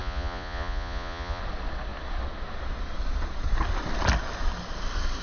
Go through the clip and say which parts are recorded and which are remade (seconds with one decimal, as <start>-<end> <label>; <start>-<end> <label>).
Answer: 0.0-1.4 remade; 1.4-5.2 recorded